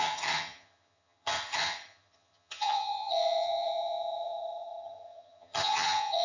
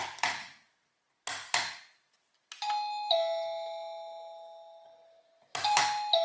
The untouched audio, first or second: second